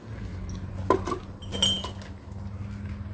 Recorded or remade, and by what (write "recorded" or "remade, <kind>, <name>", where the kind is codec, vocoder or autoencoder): recorded